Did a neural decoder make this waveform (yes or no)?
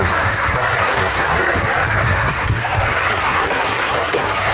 yes